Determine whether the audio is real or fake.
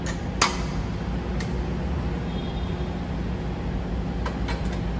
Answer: real